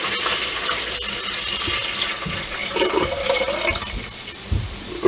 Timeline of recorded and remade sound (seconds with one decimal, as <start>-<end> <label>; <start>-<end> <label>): 0.0-2.6 recorded; 2.6-3.5 remade; 3.5-5.1 recorded